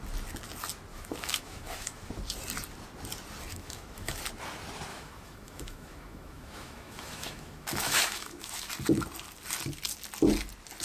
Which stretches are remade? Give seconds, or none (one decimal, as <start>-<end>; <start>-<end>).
0.9-2.1; 3.5-4.2; 4.9-8.7